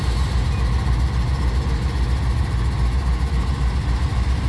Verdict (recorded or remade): recorded